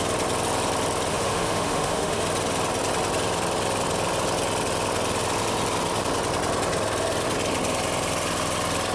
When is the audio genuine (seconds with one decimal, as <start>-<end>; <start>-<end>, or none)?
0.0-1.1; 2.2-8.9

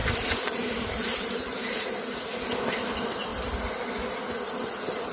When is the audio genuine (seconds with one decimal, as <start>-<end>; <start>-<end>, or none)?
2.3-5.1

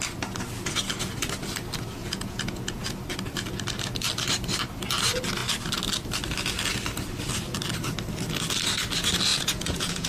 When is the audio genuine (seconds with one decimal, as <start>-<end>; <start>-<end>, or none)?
0.0-2.0; 2.8-9.3

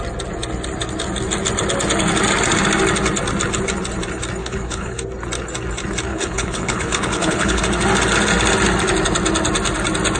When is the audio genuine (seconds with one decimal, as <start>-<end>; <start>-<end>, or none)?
0.0-4.4; 5.0-6.1; 7.6-10.2